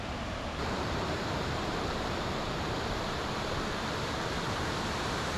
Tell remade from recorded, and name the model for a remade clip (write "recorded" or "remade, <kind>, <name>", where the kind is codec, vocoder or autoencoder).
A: remade, vocoder, BigVGAN v2